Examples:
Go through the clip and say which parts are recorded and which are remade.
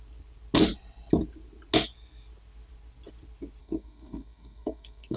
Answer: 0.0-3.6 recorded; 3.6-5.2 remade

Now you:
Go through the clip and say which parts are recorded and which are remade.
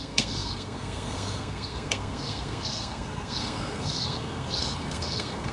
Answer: 0.0-5.5 remade